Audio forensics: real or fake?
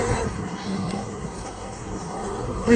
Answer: fake